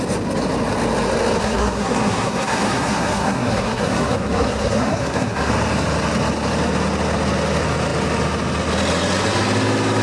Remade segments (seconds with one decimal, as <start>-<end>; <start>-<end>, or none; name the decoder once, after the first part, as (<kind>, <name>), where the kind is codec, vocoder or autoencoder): 1.4-5.5 (codec, SNAC)